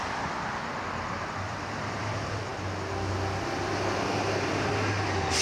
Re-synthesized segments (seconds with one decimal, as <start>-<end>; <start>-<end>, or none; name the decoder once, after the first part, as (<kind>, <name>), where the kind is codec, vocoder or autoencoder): 0.0-2.5 (vocoder, BigVGAN v2)

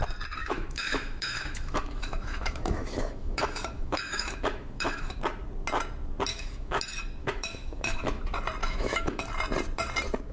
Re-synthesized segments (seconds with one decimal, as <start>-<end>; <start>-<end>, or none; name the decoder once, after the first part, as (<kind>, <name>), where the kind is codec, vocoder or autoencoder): 0.4-5.2 (autoencoder, DAC-VAE); 6.3-6.8; 7.2-8.2; 8.6-9.2

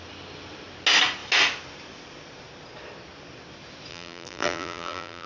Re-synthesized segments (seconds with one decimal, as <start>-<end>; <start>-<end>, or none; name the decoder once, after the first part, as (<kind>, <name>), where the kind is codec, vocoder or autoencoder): 3.9-5.3 (vocoder, BigVGAN v2)

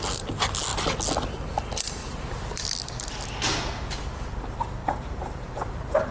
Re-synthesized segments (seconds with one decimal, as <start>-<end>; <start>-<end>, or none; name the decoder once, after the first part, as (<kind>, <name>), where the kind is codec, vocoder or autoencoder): 2.0-2.6 (vocoder, BigVGAN v2); 4.8-6.1

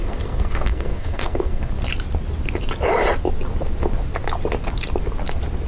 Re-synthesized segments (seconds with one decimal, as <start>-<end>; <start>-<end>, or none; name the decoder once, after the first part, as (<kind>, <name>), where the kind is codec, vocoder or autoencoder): 0.0-1.7 (codec, SNAC)

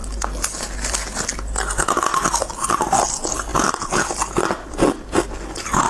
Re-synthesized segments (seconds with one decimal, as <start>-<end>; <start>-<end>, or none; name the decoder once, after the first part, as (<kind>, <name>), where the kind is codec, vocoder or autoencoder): none